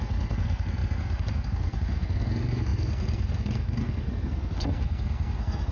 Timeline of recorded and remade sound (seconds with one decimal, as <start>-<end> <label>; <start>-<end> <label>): 0.0-5.7 remade